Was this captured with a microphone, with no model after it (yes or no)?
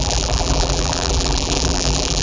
no